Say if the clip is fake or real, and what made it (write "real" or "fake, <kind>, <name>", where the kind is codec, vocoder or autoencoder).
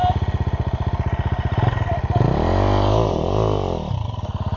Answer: real